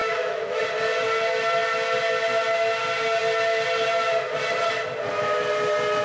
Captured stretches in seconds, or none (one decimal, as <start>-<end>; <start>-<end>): 0.6-6.0